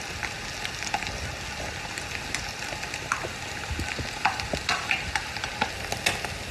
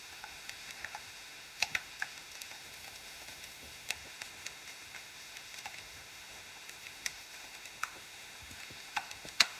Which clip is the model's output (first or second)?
second